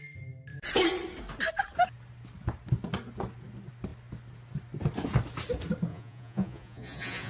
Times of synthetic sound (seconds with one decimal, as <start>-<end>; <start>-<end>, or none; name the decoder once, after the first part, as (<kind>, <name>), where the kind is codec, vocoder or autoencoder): 5.9-7.3 (vocoder, Vocos)